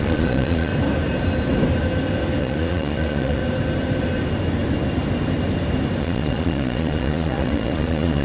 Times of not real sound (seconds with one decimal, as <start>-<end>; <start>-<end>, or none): 0.0-0.7; 2.4-3.4; 6.0-8.2